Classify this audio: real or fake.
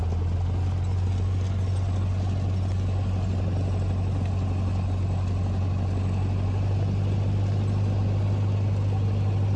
real